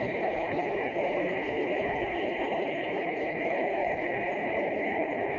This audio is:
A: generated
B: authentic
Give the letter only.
A